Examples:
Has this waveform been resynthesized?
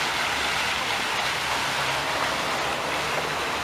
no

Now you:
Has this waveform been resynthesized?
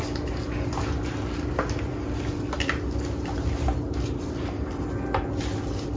no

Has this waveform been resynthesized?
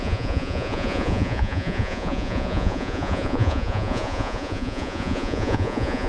yes